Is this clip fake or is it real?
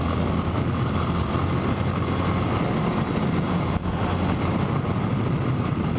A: real